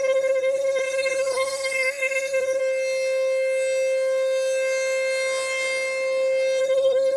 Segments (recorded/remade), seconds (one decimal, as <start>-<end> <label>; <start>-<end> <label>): 0.0-2.6 remade; 2.6-6.6 recorded; 6.6-7.2 remade